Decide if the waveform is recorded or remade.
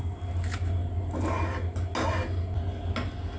recorded